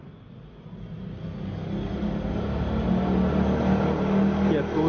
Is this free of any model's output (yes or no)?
yes